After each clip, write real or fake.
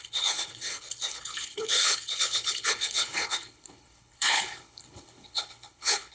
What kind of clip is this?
fake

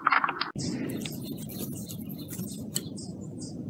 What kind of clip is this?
real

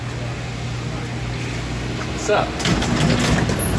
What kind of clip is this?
real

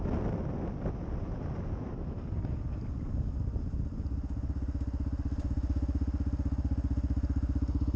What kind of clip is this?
real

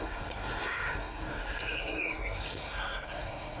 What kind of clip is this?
fake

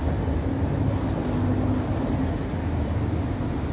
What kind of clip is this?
real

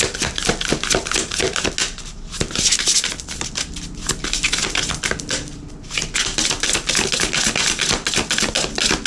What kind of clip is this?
real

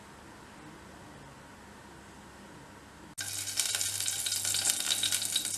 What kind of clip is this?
real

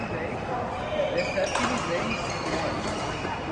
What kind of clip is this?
real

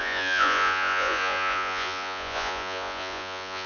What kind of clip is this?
fake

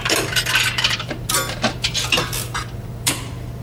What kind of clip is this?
fake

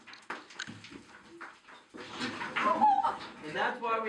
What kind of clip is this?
real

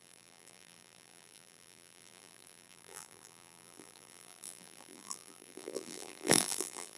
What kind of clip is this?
fake